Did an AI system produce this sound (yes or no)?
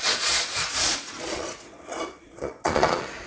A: yes